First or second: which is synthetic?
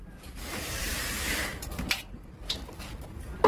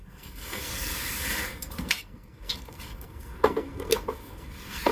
second